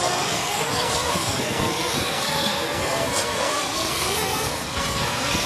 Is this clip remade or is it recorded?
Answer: remade